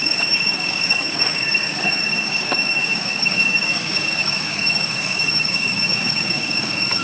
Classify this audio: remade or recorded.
remade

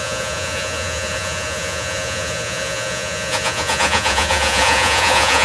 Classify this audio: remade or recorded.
remade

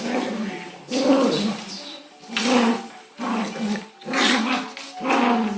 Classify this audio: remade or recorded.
recorded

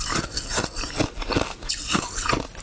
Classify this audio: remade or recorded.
recorded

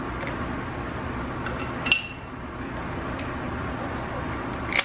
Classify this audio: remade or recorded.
recorded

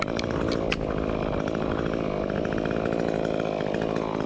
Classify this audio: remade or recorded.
recorded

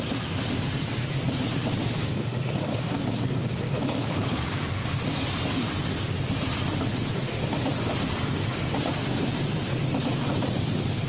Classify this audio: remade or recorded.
remade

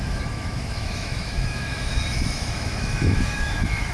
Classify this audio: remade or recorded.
remade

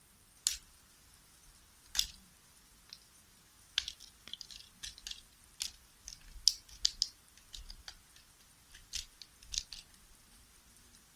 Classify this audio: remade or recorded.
recorded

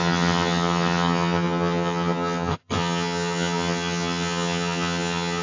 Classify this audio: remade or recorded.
remade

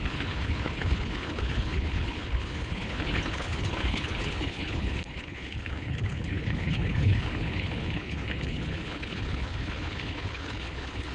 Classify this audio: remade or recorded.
remade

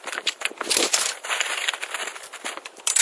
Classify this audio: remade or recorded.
remade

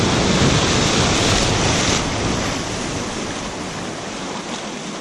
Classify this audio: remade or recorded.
recorded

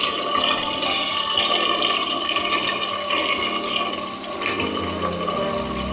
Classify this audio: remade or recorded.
recorded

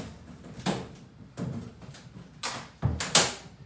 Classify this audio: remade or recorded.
recorded